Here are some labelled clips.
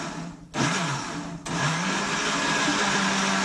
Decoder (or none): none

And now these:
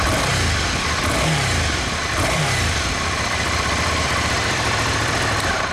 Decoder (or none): vocoder, BigVGAN v2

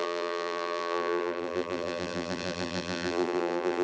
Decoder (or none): vocoder, BigVGAN v2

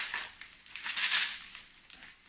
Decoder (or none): none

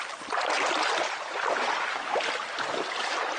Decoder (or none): none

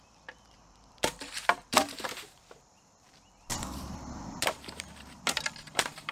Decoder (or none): vocoder, BigVGAN v2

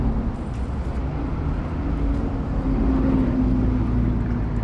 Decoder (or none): none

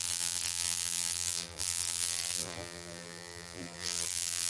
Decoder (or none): vocoder, BigVGAN v2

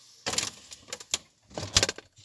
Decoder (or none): none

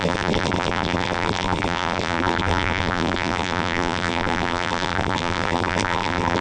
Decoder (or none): vocoder, BigVGAN v2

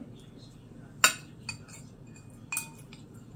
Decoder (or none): none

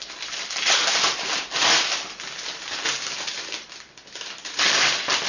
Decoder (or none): none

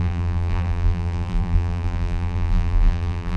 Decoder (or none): vocoder, BigVGAN v2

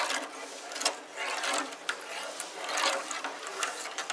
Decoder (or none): none